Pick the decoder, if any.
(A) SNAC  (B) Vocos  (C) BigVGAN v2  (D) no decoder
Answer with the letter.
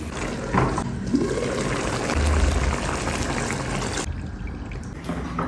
D